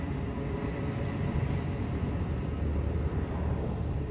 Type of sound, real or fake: real